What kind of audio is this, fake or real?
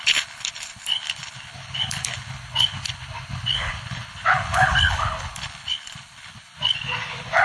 fake